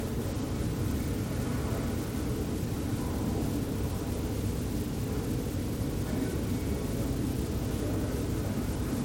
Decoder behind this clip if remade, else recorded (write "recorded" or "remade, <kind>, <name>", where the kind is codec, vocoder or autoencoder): recorded